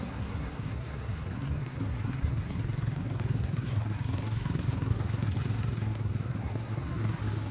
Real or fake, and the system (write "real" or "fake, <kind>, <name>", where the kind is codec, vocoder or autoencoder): fake, codec, SNAC